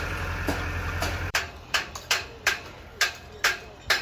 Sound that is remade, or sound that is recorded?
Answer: remade